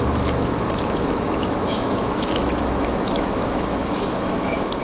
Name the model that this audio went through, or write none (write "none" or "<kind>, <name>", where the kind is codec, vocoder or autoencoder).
autoencoder, DAC-VAE